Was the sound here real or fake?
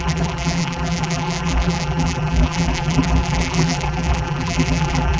fake